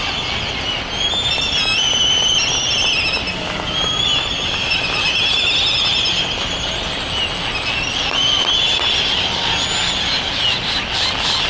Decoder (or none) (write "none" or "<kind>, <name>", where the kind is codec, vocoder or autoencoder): none